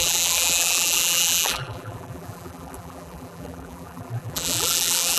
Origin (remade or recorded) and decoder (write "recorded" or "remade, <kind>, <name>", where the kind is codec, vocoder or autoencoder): remade, vocoder, BigVGAN v2